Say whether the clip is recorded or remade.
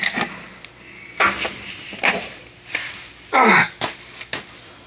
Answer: recorded